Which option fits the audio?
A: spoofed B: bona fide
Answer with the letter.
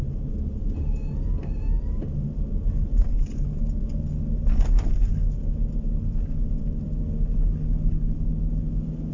B